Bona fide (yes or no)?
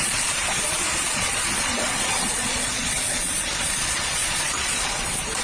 no